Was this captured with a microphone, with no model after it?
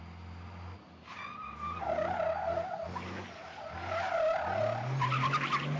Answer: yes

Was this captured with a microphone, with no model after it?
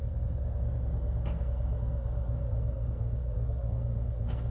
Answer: no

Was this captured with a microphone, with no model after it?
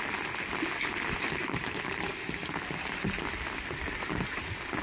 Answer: yes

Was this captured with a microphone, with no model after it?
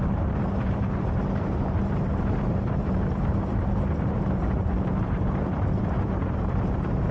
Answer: no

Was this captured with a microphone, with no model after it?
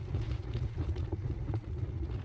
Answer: no